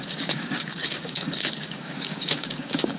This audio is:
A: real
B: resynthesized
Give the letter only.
B